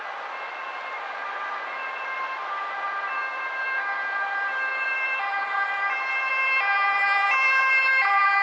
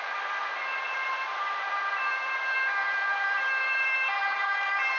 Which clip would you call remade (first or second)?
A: second